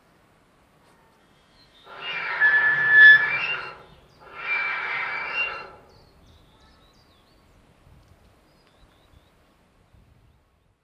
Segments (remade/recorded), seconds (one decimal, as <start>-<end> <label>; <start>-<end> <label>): 0.0-1.2 recorded; 1.2-4.0 remade; 4.0-4.4 recorded; 4.4-5.1 remade; 5.1-10.8 recorded